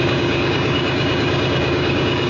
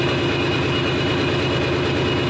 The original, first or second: second